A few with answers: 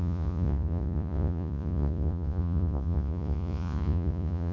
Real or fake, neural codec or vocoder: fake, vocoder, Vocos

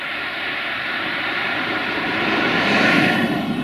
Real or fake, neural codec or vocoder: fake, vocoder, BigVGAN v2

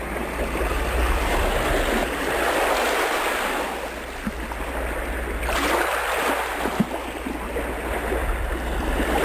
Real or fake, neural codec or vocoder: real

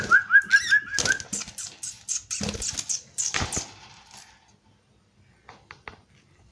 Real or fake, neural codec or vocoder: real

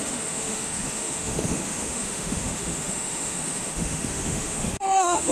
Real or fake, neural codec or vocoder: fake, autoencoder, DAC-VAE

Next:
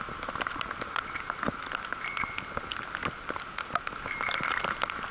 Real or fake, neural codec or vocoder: real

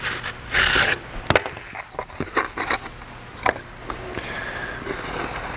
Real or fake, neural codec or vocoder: real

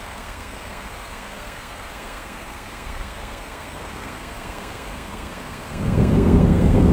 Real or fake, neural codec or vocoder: fake, codec, SNAC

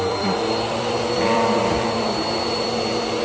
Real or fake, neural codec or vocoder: fake, vocoder, BigVGAN v2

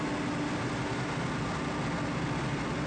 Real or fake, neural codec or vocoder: real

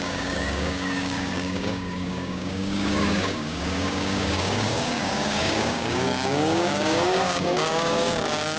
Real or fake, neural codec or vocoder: fake, codec, DAC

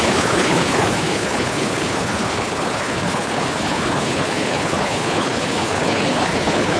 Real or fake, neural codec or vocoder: fake, codec, HILCodec